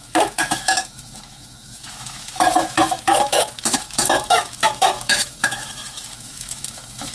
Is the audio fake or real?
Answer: fake